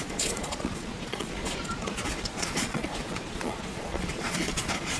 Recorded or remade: remade